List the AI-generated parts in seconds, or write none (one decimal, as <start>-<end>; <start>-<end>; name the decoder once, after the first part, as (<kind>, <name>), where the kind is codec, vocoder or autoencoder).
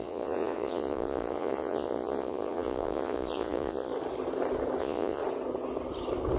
0.0-3.9 (vocoder, Vocos); 4.8-5.2